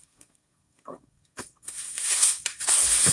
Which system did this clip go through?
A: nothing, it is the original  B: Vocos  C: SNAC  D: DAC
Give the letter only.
C